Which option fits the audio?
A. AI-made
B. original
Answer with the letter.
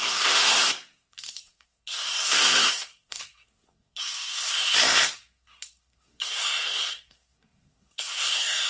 A